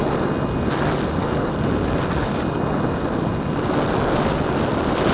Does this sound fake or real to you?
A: real